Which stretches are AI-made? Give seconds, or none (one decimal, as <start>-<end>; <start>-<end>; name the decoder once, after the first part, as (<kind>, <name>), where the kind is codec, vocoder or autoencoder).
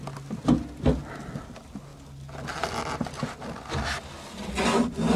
none